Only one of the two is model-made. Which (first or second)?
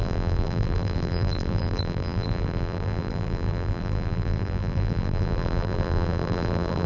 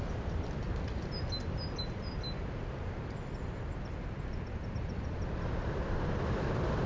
first